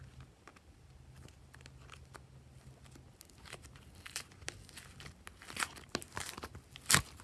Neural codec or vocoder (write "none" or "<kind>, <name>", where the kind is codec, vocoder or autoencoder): none